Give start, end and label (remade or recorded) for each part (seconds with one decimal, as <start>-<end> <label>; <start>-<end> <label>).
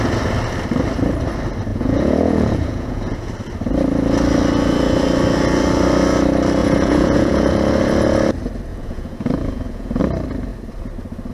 0.0-1.7 recorded; 1.7-3.3 remade; 3.3-6.6 recorded; 6.6-7.5 remade; 7.5-8.7 recorded; 8.7-10.0 remade; 10.0-11.3 recorded